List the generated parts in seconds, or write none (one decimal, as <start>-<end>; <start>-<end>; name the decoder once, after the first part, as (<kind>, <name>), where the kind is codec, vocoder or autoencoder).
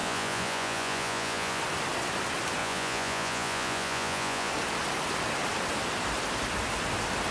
0.0-1.6 (vocoder, Vocos); 2.6-4.5